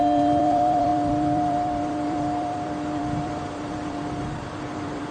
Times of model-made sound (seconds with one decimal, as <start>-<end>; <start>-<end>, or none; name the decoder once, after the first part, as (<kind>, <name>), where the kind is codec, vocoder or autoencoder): 0.0-5.1 (vocoder, BigVGAN v2)

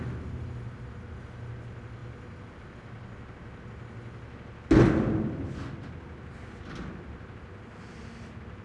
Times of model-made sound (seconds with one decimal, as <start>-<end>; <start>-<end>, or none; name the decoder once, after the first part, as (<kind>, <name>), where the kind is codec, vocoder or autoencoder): none

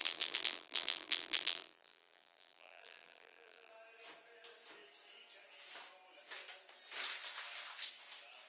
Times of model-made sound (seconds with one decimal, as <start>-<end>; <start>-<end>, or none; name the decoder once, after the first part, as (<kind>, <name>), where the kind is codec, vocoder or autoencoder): 0.0-3.7 (vocoder, BigVGAN v2)

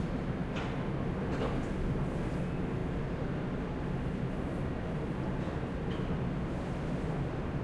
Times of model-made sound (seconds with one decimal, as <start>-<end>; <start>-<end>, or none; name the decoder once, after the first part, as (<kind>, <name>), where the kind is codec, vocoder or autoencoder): none

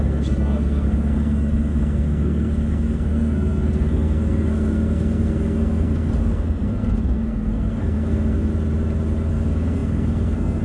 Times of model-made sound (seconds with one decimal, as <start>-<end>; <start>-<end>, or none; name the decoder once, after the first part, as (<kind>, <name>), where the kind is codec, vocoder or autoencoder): 0.0-8.5 (codec, SNAC); 9.3-10.6

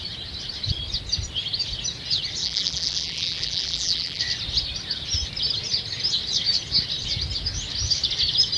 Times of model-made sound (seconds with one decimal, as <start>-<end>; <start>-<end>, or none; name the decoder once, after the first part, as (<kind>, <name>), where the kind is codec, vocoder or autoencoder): 2.4-4.2 (vocoder, BigVGAN v2)

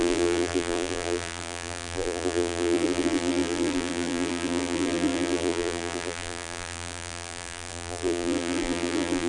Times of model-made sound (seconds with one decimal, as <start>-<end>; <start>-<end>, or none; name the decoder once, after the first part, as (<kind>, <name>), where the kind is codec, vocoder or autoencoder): 0.0-9.3 (vocoder, BigVGAN v2)